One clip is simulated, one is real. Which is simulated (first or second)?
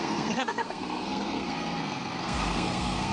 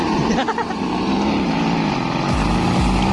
first